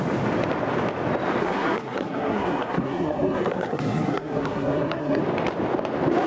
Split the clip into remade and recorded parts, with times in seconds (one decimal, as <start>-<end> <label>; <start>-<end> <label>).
0.0-1.4 recorded; 1.4-5.2 remade; 5.2-6.3 recorded